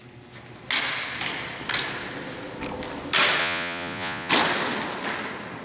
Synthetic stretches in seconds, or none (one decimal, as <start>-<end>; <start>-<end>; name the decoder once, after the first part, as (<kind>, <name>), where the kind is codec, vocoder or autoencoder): 3.4-4.3 (vocoder, Vocos)

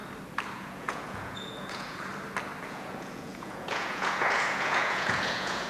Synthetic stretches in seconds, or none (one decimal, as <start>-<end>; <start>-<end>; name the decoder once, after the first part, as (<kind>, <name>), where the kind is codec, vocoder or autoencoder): 0.5-2.1 (vocoder, Vocos); 2.7-5.7